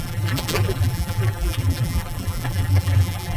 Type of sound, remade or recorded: remade